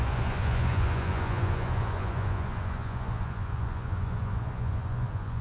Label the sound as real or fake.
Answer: fake